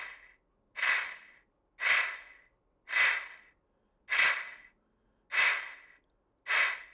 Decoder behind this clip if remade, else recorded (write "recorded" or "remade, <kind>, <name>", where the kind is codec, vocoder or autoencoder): recorded